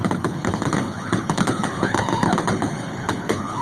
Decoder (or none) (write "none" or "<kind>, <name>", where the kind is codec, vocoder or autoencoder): codec, HILCodec